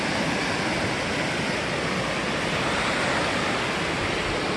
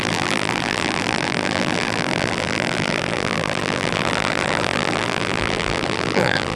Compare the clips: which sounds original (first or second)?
first